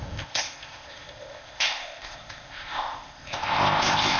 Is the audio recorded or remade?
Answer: remade